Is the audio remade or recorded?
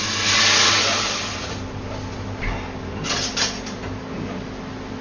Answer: recorded